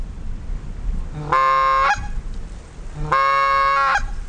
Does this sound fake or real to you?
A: real